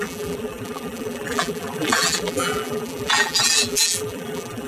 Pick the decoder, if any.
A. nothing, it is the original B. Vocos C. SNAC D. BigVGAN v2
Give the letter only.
D